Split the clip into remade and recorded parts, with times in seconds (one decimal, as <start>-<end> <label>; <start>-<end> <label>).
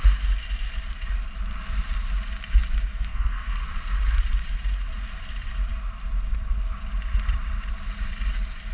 0.0-2.9 recorded; 2.9-3.6 remade; 3.6-8.7 recorded